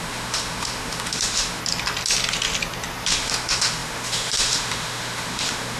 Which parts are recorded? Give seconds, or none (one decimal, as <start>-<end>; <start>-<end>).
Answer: 1.6-3.1